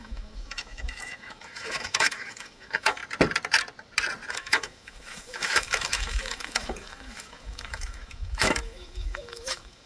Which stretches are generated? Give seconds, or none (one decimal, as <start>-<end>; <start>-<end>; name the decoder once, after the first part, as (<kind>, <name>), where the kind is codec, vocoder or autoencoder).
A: 0.0-3.0 (autoencoder, DAC-VAE); 4.3-9.9